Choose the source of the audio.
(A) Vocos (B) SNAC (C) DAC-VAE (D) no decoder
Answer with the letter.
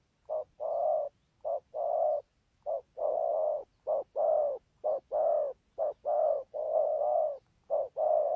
D